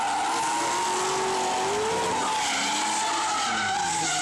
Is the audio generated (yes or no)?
no